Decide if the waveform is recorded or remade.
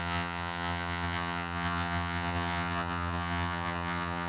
remade